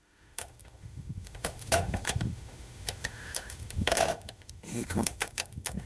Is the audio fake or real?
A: fake